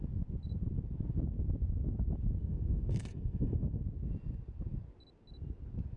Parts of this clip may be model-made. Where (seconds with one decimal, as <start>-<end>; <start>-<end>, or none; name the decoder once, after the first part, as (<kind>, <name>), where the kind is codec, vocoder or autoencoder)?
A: 2.4-3.8 (codec, SNAC)